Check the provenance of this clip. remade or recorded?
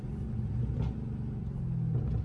recorded